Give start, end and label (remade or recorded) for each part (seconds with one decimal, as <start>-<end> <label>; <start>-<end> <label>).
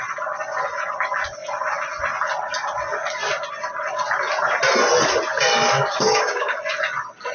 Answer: 0.0-5.9 recorded; 5.9-6.6 remade; 6.6-7.3 recorded